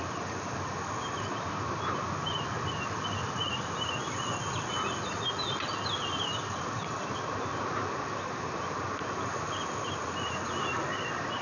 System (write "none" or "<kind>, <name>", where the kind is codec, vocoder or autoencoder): none